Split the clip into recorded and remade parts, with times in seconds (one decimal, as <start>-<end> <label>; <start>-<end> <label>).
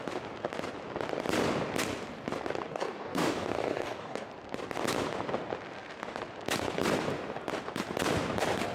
0.0-2.7 recorded; 2.7-4.3 remade; 4.3-8.7 recorded